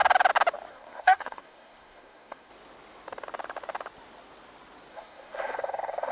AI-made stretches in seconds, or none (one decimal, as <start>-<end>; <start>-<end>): 0.7-2.5; 4.9-6.1